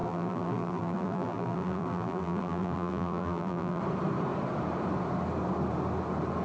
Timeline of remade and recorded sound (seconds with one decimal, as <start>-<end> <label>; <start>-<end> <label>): 0.0-3.8 remade; 3.8-6.4 recorded